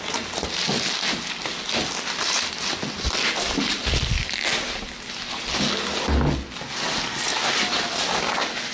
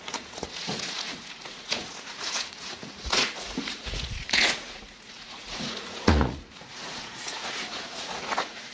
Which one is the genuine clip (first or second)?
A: first